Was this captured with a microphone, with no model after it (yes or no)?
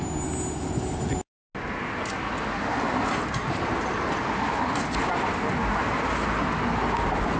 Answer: yes